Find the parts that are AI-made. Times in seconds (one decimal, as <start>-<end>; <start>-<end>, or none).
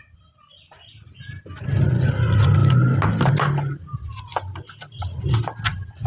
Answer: none